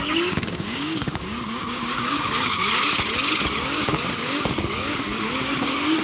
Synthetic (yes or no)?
yes